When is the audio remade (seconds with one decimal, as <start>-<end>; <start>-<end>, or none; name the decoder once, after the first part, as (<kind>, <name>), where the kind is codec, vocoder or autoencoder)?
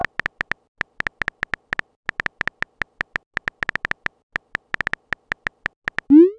none